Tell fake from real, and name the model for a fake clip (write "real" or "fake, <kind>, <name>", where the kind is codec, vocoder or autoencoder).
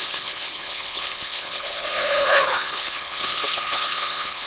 fake, codec, HILCodec